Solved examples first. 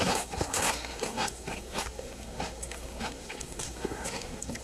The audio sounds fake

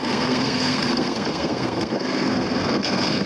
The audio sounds fake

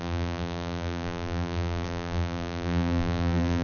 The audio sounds fake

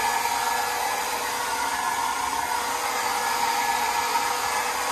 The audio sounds real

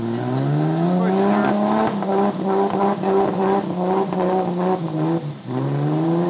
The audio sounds real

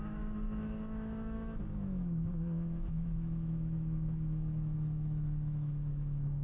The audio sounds fake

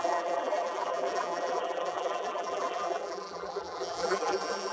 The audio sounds fake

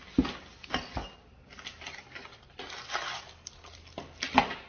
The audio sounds real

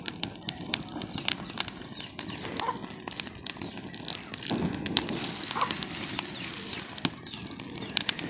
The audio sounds real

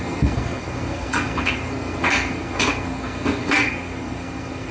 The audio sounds fake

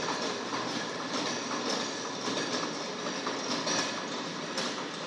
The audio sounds real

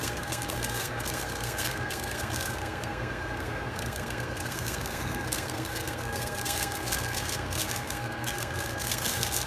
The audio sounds fake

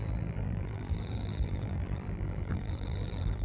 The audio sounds fake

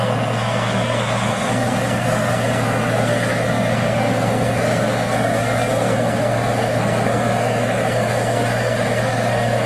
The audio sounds fake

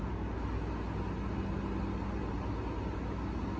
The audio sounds real